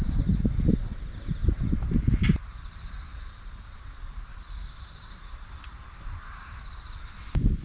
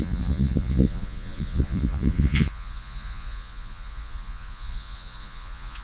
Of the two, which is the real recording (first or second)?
first